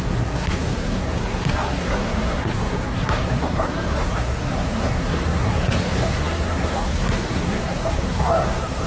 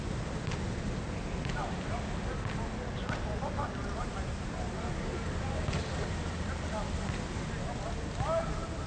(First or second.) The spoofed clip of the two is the first